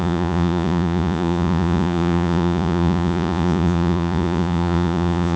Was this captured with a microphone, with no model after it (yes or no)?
no